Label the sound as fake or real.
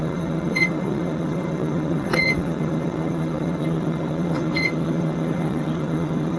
fake